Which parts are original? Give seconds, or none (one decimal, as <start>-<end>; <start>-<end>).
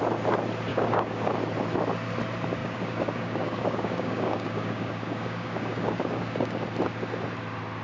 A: 0.0-0.7; 1.3-2.6; 6.6-7.8